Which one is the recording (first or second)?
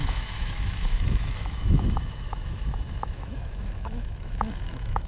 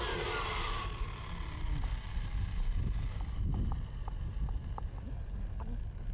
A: second